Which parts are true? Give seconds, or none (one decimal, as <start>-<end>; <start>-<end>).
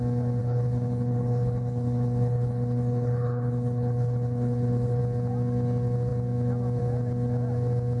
0.0-0.4; 5.0-8.0